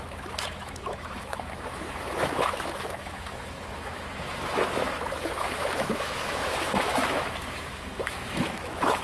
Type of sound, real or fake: fake